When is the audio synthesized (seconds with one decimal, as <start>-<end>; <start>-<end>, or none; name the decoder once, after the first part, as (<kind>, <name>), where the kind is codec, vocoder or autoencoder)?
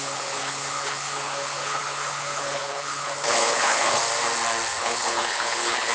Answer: 0.0-4.0 (codec, HILCodec); 4.8-5.9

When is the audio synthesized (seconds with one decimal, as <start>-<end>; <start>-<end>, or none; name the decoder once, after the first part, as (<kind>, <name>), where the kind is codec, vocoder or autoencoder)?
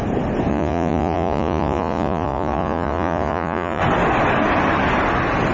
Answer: 0.5-3.8 (vocoder, Vocos)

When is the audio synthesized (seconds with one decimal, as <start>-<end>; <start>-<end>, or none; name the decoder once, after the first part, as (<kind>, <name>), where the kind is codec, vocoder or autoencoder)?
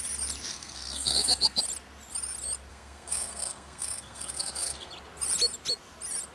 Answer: 0.5-1.6 (codec, SNAC); 2.7-4.9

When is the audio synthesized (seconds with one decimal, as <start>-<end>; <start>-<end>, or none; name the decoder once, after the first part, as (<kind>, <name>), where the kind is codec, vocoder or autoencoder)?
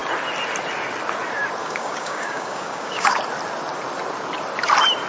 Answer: 1.6-3.2 (codec, DAC)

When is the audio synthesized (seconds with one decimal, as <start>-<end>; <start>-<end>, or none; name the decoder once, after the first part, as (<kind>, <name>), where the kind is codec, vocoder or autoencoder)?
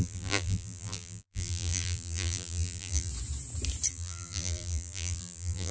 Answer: 0.0-3.1 (vocoder, BigVGAN v2); 3.9-5.7